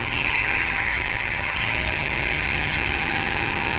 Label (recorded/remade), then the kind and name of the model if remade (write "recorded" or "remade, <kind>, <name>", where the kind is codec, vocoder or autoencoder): remade, vocoder, HiFi-GAN